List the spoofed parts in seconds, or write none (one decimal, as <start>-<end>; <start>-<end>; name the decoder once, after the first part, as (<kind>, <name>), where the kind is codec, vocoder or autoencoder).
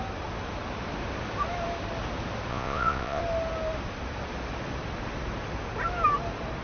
2.5-3.2 (vocoder, Vocos)